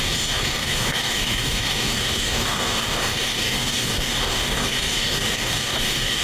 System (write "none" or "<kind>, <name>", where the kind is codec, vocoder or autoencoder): codec, DAC